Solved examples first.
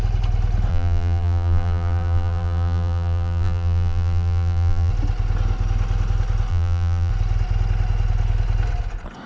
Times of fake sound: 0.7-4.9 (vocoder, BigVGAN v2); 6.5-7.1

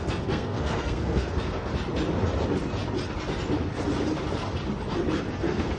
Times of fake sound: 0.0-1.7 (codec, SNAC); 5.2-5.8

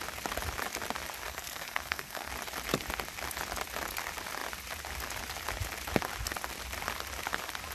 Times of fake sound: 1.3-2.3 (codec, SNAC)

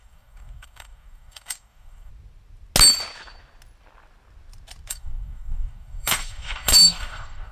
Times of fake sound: 0.0-2.1 (codec, DAC); 4.9-7.5

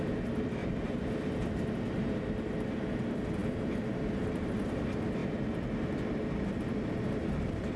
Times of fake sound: 0.6-2.2 (vocoder, BigVGAN v2)